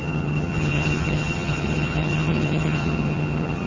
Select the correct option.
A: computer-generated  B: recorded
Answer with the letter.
A